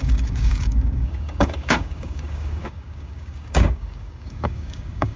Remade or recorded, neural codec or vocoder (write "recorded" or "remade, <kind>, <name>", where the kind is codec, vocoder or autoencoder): remade, codec, DAC